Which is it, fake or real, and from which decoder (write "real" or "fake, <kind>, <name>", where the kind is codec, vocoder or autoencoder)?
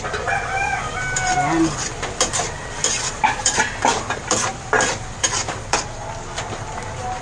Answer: real